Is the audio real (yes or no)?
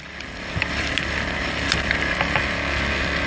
yes